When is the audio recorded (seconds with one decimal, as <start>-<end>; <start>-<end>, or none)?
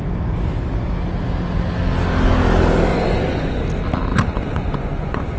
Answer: 0.0-2.9; 3.6-4.1